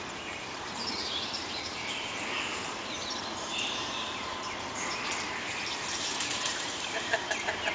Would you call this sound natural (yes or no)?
no